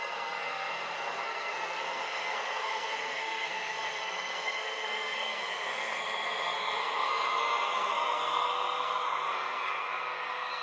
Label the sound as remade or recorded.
remade